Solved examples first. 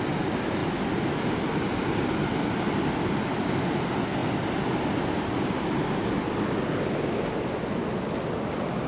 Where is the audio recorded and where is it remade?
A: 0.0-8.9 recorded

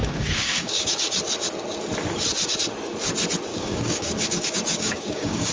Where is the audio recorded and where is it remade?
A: 0.0-1.0 remade; 1.0-3.5 recorded; 3.5-5.5 remade

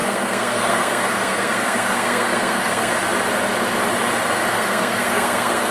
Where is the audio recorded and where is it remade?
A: 0.0-2.9 remade; 2.9-4.5 recorded; 4.5-5.7 remade

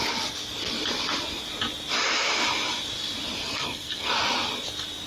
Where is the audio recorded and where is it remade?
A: 0.0-3.4 recorded; 3.4-4.1 remade; 4.1-5.1 recorded

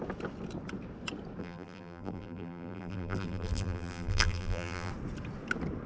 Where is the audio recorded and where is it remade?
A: 0.0-1.4 recorded; 1.4-4.9 remade; 4.9-5.9 recorded